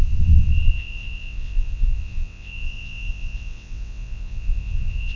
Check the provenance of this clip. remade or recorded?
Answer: remade